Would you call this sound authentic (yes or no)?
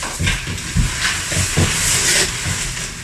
no